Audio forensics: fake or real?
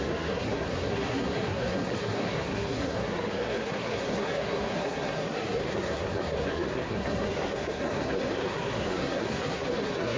fake